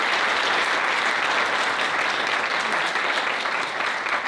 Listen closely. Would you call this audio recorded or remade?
recorded